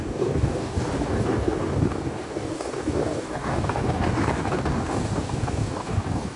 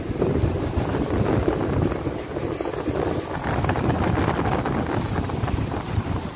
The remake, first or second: first